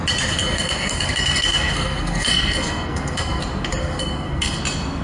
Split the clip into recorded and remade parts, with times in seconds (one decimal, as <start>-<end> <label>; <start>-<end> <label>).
0.0-0.4 recorded; 0.4-3.4 remade; 3.4-3.8 recorded; 3.8-4.6 remade; 4.6-5.0 recorded